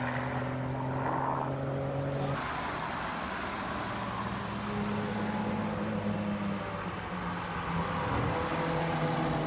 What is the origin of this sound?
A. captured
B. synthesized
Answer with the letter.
A